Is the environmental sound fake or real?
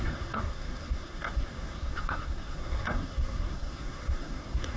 fake